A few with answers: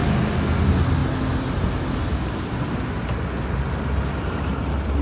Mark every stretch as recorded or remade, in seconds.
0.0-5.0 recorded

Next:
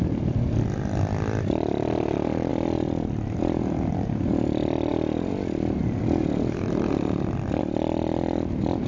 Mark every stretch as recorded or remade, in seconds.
0.0-8.9 recorded

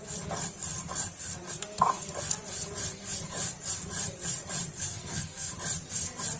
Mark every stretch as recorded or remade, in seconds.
0.0-4.9 recorded; 4.9-5.5 remade; 5.5-6.4 recorded

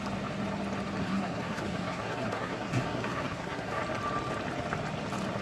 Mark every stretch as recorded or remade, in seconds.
0.0-1.0 recorded; 1.0-3.8 remade; 3.8-5.4 recorded

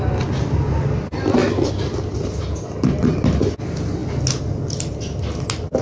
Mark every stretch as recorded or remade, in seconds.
0.0-5.8 recorded